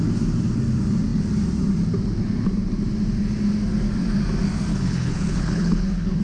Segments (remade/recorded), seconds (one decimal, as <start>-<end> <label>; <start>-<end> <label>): 0.0-4.7 recorded; 4.7-6.2 remade